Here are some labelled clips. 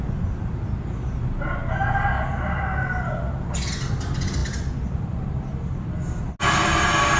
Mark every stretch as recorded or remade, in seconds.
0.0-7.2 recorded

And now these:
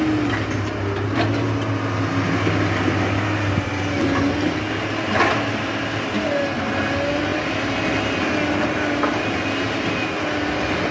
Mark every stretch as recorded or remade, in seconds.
0.0-10.9 recorded